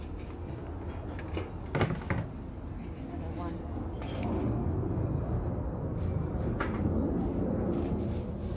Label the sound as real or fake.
real